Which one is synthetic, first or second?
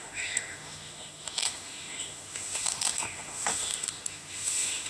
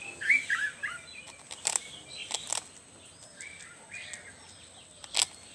first